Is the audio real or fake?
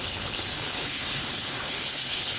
fake